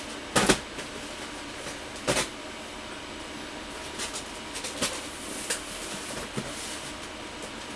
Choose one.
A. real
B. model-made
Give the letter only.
A